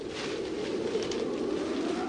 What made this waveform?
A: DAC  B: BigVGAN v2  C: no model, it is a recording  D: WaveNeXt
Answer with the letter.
C